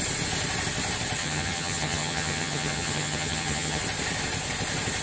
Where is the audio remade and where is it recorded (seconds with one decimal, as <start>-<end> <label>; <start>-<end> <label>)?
0.0-1.2 recorded; 1.2-3.8 remade; 3.8-5.0 recorded

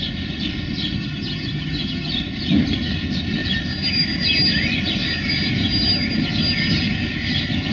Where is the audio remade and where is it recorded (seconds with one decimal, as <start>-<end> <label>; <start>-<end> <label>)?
0.0-1.0 recorded; 1.0-2.1 remade; 2.1-7.7 recorded